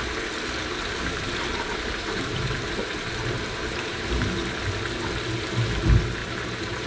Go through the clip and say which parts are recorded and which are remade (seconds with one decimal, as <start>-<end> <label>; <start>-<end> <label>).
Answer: 0.0-1.5 recorded; 1.5-4.4 remade; 4.4-6.2 recorded; 6.2-6.9 remade

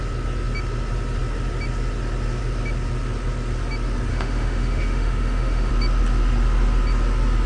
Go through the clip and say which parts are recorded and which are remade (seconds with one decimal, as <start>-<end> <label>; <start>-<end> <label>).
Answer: 0.0-4.1 recorded; 4.1-5.7 remade; 5.7-7.5 recorded

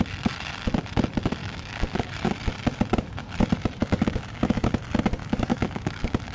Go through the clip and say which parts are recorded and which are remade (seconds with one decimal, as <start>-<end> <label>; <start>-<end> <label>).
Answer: 0.0-1.4 recorded; 1.4-2.1 remade; 2.1-3.8 recorded; 3.8-4.8 remade; 4.8-5.2 recorded; 5.2-6.3 remade

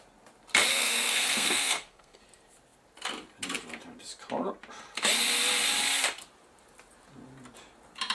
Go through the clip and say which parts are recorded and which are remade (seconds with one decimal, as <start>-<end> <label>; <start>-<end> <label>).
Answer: 0.0-0.7 recorded; 0.7-2.2 remade; 2.2-8.1 recorded